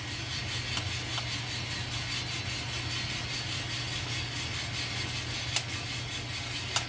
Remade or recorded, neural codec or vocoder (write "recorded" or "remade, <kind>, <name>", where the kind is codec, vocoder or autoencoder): recorded